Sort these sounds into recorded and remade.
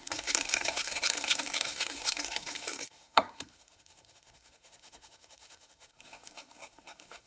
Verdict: remade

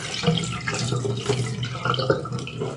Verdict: recorded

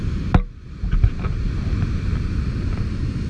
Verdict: recorded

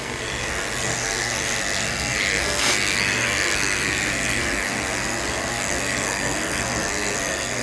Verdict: remade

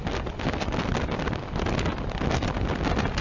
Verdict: recorded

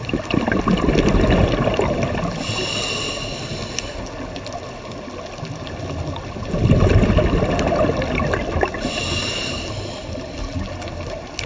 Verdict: recorded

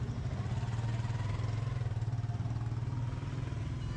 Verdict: recorded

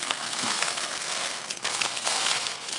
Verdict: remade